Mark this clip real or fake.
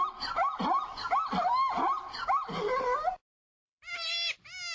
real